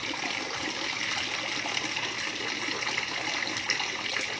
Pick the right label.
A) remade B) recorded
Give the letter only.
B